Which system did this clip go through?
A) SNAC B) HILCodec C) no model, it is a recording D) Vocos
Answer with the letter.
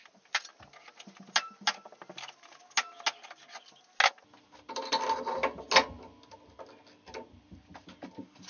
C